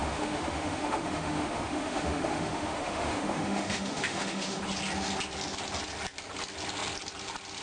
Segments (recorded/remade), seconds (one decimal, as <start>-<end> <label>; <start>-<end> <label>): 0.0-4.6 remade; 4.6-7.6 recorded